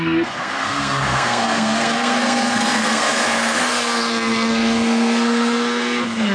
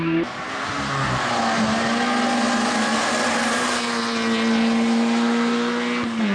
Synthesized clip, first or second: first